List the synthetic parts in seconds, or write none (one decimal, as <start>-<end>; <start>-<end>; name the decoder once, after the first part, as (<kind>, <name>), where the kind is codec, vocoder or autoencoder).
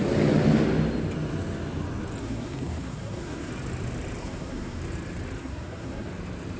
2.2-3.5 (codec, SNAC); 4.2-4.8; 5.4-6.1